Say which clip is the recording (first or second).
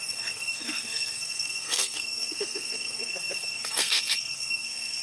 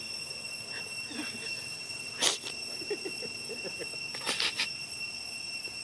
second